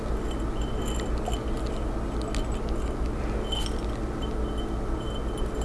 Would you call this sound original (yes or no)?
yes